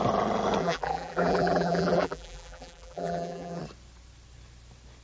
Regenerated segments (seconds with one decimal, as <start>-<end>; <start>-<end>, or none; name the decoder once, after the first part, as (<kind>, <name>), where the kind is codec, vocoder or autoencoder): 0.6-3.6 (vocoder, BigVGAN v2)